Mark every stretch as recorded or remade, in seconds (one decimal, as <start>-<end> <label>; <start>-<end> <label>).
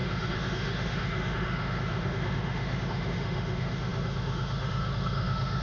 0.0-5.6 remade